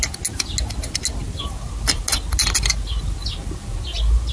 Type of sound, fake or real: real